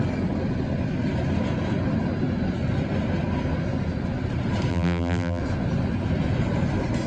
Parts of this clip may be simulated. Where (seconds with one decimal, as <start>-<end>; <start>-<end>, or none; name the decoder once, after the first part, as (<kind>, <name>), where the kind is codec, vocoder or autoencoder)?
4.7-5.4 (vocoder, BigVGAN v2)